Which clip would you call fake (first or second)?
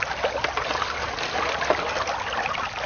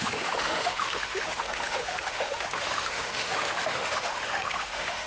second